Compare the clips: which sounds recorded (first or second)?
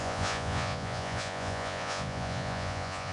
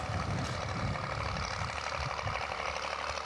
second